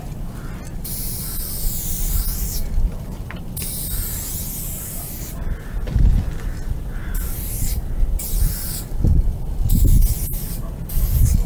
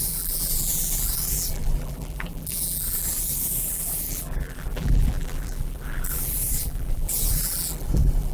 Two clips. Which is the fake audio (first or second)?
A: second